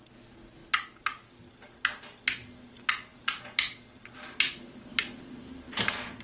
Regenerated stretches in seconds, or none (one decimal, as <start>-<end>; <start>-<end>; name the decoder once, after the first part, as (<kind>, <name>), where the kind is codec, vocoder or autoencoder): none